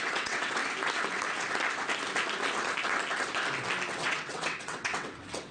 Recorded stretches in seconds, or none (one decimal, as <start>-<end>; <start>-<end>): 0.6-3.9